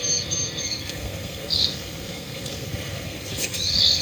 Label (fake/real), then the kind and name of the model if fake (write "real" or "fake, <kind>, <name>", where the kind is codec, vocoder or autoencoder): fake, codec, SNAC